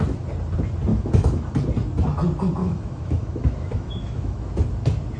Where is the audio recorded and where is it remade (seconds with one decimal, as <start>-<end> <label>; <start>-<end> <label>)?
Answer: 0.0-0.9 recorded; 0.9-1.5 remade; 1.5-2.6 recorded; 2.6-4.5 remade; 4.5-5.2 recorded